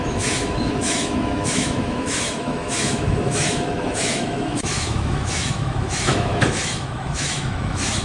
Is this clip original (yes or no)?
no